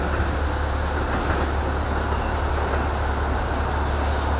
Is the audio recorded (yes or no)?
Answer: yes